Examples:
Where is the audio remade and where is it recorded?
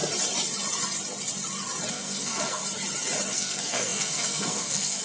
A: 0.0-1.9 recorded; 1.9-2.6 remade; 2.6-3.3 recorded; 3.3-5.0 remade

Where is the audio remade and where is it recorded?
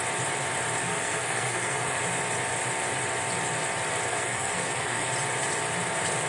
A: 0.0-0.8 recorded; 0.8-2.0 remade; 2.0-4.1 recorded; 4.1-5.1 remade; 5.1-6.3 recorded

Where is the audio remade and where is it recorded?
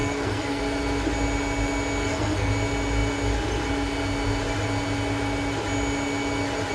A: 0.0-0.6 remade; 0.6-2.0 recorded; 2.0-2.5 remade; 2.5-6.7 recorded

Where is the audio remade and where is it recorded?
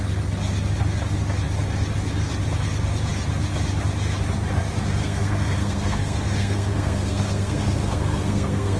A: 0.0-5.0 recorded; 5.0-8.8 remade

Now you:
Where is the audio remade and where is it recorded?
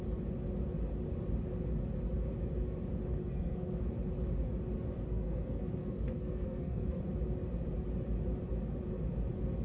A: 0.0-3.2 recorded; 3.2-3.8 remade; 3.8-5.1 recorded; 5.1-7.0 remade; 7.0-9.6 recorded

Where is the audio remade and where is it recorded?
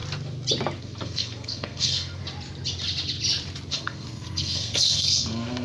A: 0.0-0.8 recorded; 0.8-2.2 remade; 2.2-3.7 recorded; 3.7-5.6 remade